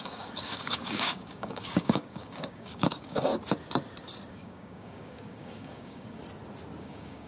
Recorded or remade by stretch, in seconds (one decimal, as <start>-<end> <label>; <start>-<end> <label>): 0.0-3.3 remade; 3.3-4.3 recorded; 4.3-6.2 remade; 6.2-6.8 recorded; 6.8-7.3 remade